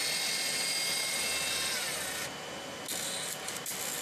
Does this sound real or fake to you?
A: real